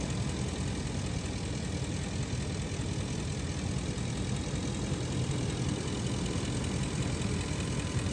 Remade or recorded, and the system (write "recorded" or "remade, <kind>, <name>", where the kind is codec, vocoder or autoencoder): recorded